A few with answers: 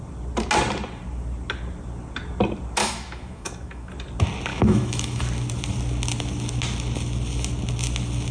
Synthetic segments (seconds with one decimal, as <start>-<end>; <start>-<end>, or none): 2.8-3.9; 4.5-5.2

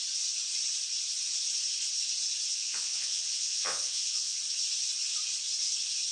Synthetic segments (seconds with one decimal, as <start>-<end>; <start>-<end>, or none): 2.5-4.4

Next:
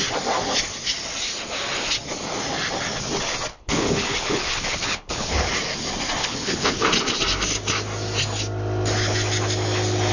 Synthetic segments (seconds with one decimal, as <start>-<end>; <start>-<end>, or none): 3.5-5.5; 6.2-6.9

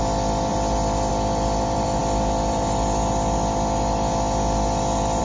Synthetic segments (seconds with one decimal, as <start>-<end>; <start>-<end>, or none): 0.0-5.2